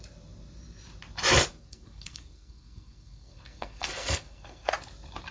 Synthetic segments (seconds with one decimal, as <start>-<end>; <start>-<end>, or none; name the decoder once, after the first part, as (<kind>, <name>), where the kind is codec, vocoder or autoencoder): 1.5-4.7 (codec, SNAC)